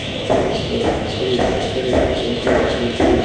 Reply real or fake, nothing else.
fake